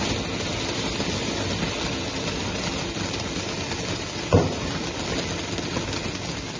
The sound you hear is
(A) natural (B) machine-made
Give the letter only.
A